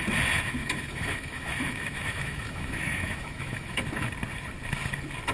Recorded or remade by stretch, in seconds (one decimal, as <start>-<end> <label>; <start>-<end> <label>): 0.0-0.6 recorded; 0.6-3.8 remade; 3.8-5.3 recorded